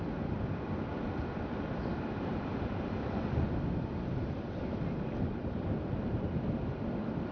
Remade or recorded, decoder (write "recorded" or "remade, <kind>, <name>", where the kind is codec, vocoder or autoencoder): remade, vocoder, BigVGAN v2